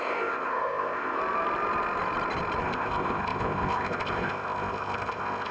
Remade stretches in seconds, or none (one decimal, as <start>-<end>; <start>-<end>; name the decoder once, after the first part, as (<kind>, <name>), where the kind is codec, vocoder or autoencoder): 0.0-1.2 (codec, ZipCodec); 2.6-5.5